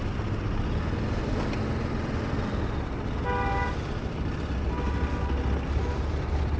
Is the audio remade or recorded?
recorded